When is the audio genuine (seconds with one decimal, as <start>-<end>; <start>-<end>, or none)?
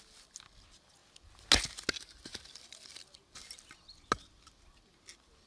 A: 0.0-5.5